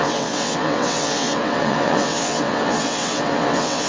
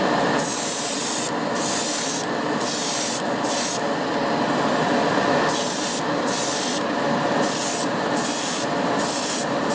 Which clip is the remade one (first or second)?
first